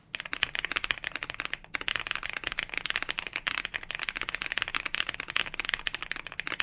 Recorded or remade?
recorded